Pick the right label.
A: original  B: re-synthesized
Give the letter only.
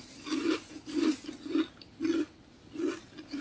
A